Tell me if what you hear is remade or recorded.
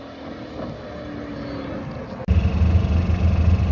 recorded